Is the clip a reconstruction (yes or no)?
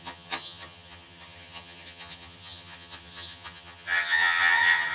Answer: yes